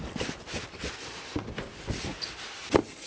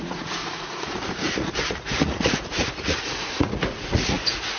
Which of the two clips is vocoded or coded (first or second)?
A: second